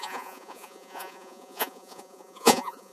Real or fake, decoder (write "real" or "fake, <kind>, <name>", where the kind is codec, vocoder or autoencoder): fake, vocoder, Vocos